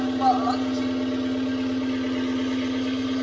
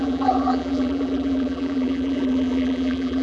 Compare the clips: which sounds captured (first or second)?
first